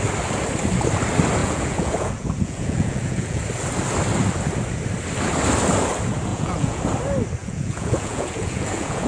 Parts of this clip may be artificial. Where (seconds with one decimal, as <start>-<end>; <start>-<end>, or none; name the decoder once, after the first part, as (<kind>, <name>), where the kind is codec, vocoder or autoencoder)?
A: 1.4-3.4 (vocoder, Vocos); 6.3-6.8; 7.4-9.1